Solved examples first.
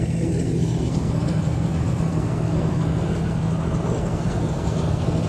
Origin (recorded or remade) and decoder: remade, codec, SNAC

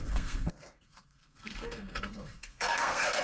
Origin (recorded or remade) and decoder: remade, codec, SNAC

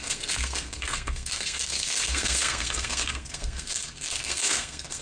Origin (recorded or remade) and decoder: remade, codec, SNAC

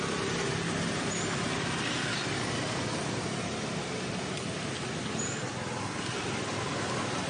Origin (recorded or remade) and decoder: recorded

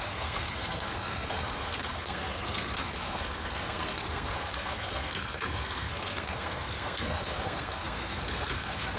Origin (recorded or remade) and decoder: remade, codec, SNAC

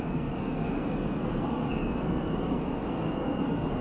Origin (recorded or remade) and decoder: remade, codec, SNAC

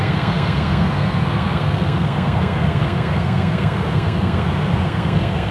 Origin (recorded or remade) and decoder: remade, codec, SNAC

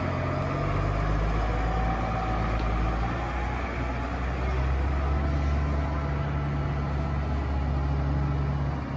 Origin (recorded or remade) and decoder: recorded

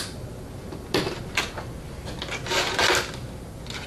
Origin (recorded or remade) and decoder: recorded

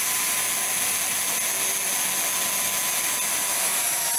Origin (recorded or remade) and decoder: recorded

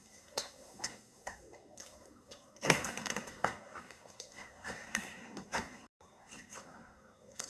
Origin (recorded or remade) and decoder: remade, codec, SNAC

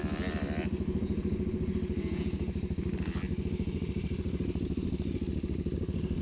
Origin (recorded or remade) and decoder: recorded